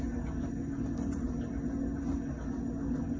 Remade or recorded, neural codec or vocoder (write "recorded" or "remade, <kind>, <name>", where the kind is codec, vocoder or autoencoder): recorded